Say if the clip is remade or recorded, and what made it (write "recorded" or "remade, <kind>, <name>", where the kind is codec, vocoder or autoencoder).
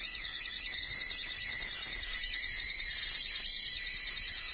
recorded